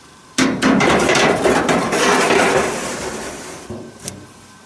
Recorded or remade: remade